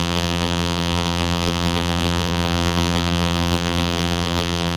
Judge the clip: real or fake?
fake